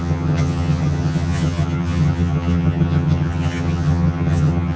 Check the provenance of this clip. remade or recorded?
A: remade